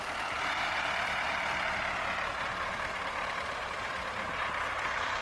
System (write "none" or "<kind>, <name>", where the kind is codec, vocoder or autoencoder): none